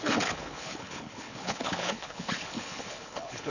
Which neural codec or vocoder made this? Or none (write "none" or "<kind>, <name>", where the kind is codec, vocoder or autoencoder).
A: codec, HILCodec